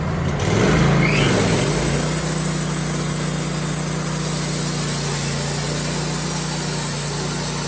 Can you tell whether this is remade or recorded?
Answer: recorded